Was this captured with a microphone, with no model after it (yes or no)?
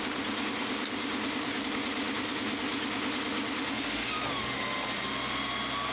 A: yes